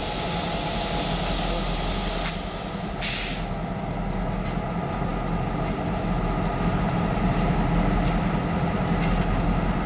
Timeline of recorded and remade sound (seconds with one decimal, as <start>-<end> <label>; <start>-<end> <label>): 0.0-9.9 recorded